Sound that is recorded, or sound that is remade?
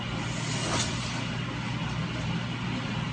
recorded